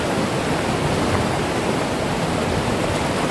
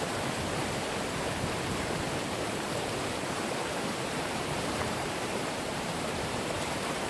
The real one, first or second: first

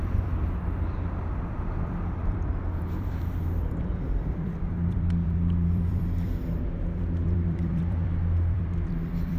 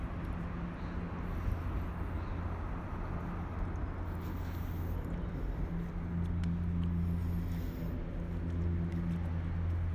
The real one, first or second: second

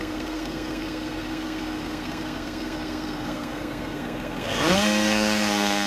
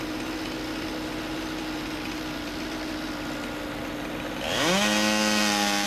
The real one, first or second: second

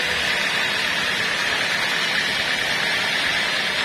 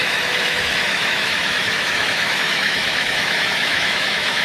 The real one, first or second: first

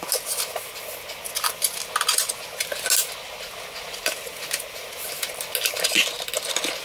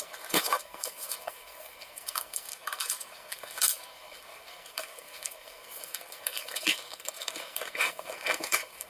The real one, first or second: first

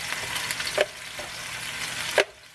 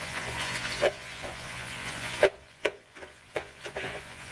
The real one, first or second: first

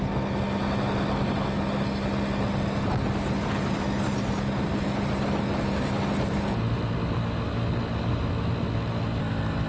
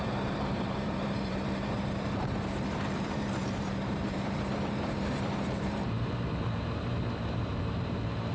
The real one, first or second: first